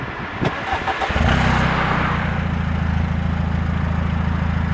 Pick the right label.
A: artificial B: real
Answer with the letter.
B